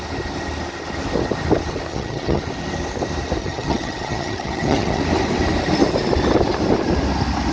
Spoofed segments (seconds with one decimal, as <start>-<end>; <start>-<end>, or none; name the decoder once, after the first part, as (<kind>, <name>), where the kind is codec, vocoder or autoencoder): 1.9-2.4 (vocoder, HiFi-GAN); 3.4-5.0